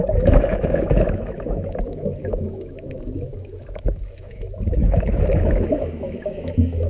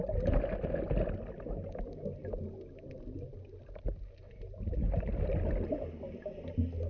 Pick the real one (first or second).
second